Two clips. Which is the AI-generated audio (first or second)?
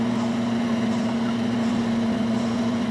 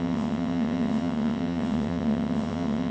second